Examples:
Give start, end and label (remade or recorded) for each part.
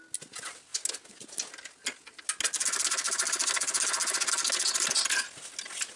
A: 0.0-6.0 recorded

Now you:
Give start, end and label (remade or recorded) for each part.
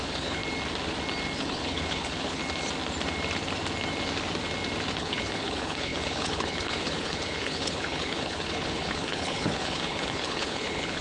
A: 0.0-0.4 remade; 0.4-1.4 recorded; 1.4-2.4 remade; 2.4-5.0 recorded; 5.0-11.0 remade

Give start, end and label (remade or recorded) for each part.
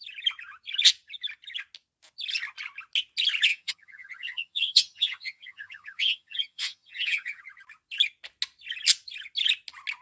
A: 0.0-3.5 recorded; 3.5-7.4 remade; 7.4-10.0 recorded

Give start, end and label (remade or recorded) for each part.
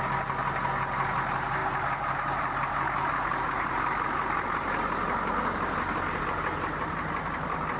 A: 0.0-7.8 recorded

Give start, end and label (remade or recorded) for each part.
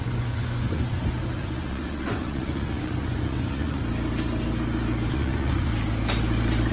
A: 0.0-3.8 remade; 3.8-5.1 recorded; 5.1-5.7 remade; 5.7-6.7 recorded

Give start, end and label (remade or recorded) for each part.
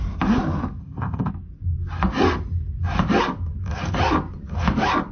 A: 0.0-0.8 recorded; 0.8-1.3 remade; 1.3-5.1 recorded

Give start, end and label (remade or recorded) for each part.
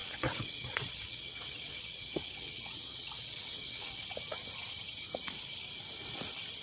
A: 0.0-4.0 remade; 4.0-6.6 recorded